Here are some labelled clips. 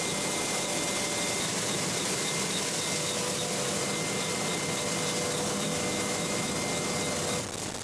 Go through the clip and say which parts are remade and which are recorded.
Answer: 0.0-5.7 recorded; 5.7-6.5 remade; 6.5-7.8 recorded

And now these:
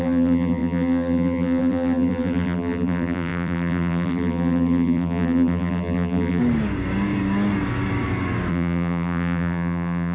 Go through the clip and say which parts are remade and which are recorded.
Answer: 0.0-6.4 remade; 6.4-8.5 recorded; 8.5-10.1 remade

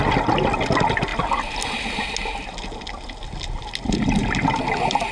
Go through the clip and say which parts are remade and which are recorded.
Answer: 0.0-5.1 recorded

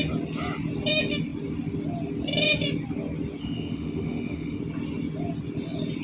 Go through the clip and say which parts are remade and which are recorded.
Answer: 0.0-3.4 recorded; 3.4-4.6 remade; 4.6-6.0 recorded

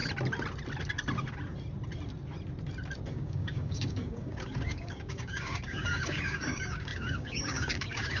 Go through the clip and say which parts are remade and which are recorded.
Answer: 0.0-3.1 recorded; 3.1-8.2 remade